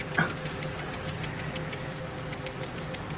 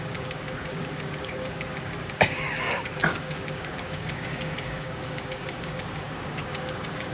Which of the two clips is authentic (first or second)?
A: first